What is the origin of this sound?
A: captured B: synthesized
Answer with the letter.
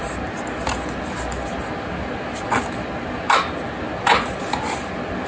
A